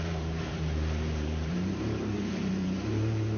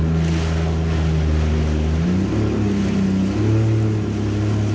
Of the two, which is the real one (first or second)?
second